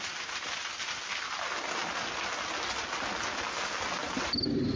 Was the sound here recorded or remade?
recorded